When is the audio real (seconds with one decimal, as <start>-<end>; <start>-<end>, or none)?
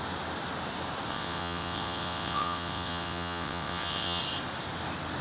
0.0-1.1; 4.2-5.2